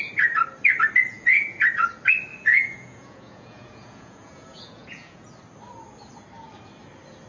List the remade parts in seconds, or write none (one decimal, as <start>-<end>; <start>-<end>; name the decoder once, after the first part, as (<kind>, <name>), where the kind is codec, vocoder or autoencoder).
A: 1.1-1.6 (vocoder, Vocos); 2.3-5.3